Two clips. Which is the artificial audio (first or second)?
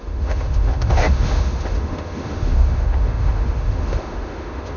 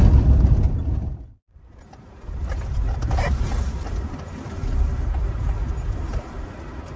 first